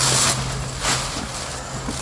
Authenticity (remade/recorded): recorded